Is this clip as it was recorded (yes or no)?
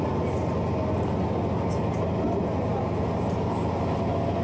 yes